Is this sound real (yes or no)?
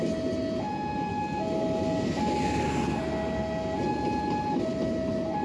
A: yes